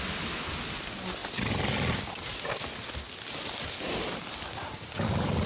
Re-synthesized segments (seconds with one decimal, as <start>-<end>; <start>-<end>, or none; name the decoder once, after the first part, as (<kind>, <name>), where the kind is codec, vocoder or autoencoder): none